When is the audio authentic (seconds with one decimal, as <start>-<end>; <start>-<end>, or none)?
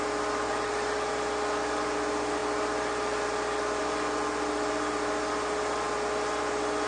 0.0-6.9